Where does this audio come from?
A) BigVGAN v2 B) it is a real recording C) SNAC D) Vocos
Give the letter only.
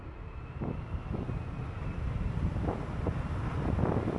B